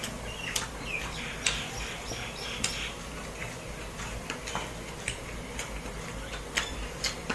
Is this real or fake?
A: real